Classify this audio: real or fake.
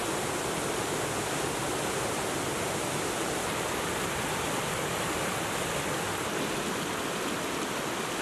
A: real